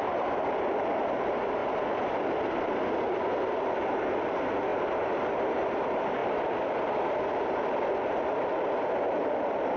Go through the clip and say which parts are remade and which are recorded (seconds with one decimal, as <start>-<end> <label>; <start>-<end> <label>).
0.0-1.6 remade; 1.6-2.5 recorded; 2.5-4.7 remade; 4.7-5.3 recorded; 5.3-9.8 remade